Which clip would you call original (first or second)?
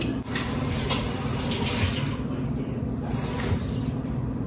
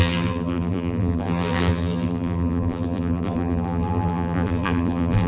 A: first